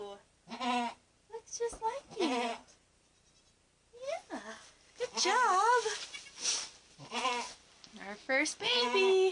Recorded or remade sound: recorded